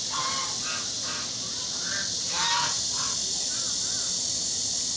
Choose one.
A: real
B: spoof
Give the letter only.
A